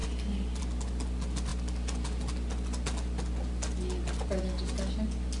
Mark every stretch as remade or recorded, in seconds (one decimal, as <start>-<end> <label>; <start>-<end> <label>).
0.0-5.4 recorded